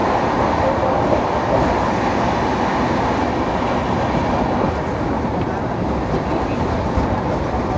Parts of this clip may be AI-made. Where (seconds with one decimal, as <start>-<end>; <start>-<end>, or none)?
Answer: none